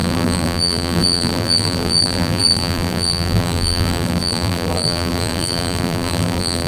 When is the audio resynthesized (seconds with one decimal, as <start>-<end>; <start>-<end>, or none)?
0.0-6.7